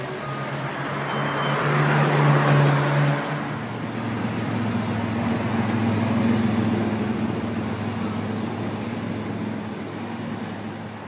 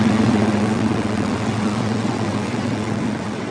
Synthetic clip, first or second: second